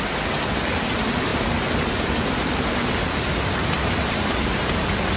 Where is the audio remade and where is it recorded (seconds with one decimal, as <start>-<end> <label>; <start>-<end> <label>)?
0.0-5.2 recorded